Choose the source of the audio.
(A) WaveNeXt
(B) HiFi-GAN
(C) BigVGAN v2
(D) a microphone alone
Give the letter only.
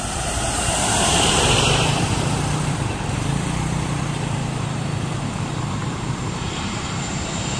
C